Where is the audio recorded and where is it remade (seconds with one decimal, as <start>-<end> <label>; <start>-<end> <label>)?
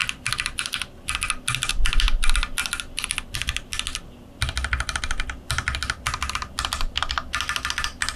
0.0-8.2 recorded